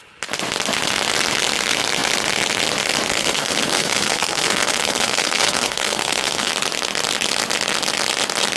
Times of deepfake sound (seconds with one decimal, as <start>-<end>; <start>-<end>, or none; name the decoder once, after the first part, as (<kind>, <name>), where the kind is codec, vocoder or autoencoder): 3.1-6.5 (codec, SNAC)